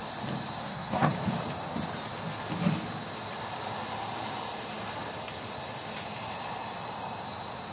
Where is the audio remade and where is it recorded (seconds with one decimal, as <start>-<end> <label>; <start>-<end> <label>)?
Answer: 0.0-0.6 recorded; 0.6-1.1 remade; 1.1-7.7 recorded